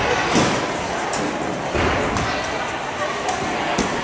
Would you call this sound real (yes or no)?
yes